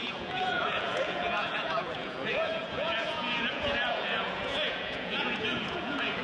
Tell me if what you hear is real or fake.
fake